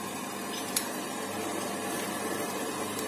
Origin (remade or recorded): remade